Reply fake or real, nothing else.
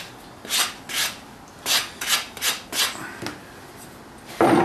real